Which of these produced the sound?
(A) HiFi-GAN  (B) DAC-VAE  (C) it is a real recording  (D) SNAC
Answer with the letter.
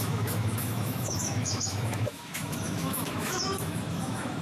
B